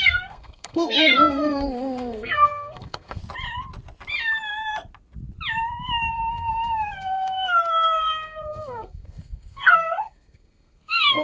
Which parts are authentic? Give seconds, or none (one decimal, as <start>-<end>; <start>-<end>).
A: 3.2-6.1